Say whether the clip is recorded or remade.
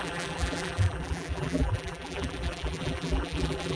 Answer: remade